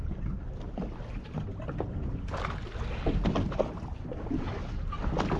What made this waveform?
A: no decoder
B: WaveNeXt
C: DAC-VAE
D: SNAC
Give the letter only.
A